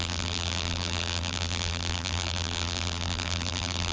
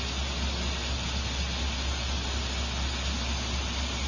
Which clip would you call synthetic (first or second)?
first